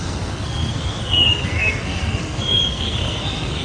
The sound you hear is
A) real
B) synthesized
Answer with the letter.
B